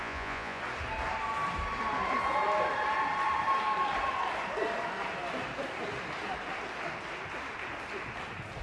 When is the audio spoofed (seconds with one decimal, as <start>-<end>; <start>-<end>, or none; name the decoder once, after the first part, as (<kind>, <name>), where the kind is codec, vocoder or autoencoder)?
0.0-0.6 (vocoder, Vocos)